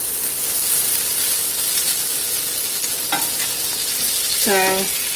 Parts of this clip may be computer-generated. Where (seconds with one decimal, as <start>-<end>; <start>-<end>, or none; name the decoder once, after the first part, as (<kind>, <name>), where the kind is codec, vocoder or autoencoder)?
none